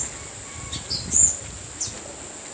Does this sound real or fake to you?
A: real